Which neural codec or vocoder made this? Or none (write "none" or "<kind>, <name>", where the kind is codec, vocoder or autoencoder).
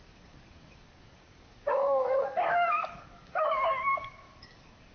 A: codec, DAC